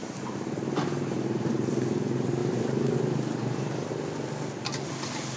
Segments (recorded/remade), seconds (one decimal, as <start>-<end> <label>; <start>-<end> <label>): 0.0-1.6 remade; 1.6-2.4 recorded; 2.4-3.9 remade; 3.9-5.4 recorded